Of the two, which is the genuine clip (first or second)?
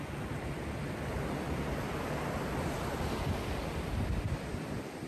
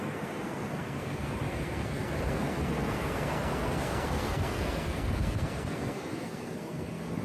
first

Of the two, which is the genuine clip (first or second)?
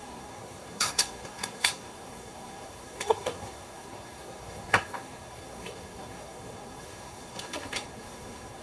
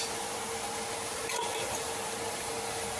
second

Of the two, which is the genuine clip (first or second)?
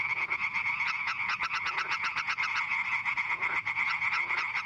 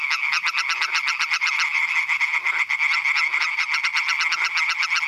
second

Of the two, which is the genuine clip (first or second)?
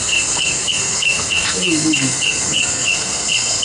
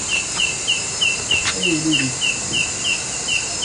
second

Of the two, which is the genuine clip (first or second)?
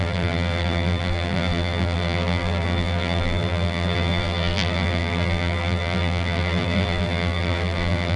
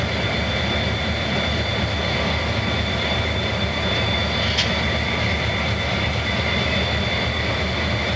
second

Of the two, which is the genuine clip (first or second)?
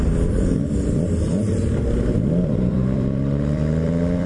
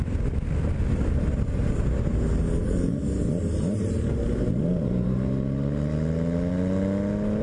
second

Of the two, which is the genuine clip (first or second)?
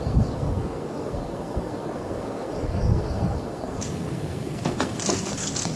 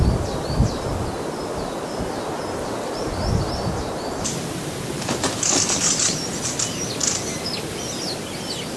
second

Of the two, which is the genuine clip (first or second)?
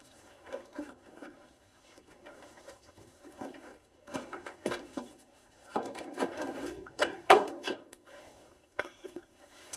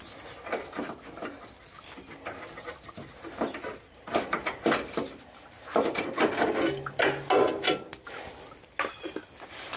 second